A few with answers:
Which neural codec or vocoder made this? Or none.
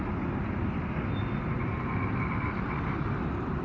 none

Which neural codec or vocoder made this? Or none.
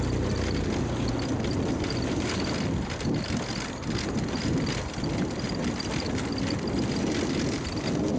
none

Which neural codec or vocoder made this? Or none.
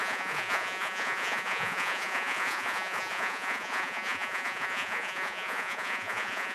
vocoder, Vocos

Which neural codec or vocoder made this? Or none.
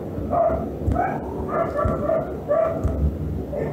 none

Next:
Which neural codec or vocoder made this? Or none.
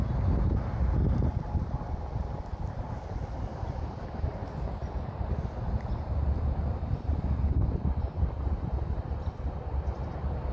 none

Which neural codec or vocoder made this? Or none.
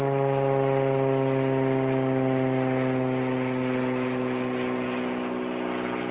none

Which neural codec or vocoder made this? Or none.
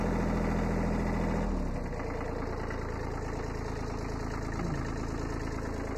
none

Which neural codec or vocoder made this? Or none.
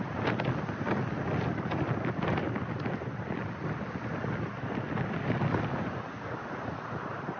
none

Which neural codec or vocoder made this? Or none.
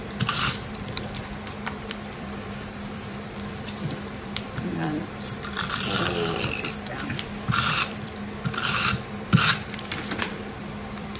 vocoder, BigVGAN v2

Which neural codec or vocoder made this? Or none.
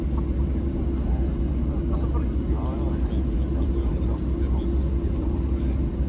none